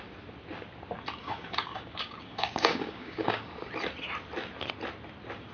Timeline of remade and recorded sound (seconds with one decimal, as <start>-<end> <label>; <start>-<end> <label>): 0.0-1.2 recorded; 1.2-3.5 remade; 3.5-5.5 recorded